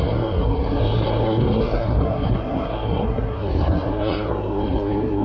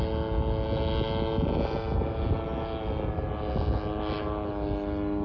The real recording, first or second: second